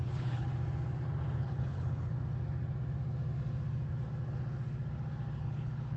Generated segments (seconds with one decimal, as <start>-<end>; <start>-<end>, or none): 0.0-0.5; 1.4-2.1; 5.4-6.0